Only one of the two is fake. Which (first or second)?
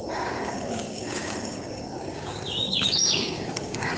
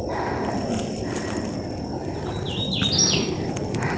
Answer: first